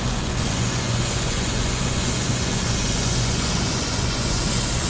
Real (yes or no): no